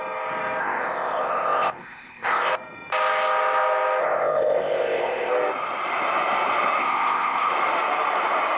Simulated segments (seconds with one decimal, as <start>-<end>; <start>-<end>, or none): 0.6-2.5; 4.0-5.3; 6.8-7.5